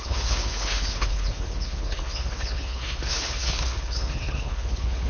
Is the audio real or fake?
fake